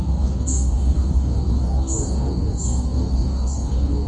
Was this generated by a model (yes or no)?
yes